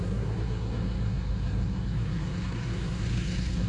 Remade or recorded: remade